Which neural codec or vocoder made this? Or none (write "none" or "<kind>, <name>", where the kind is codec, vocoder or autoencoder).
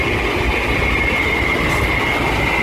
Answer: none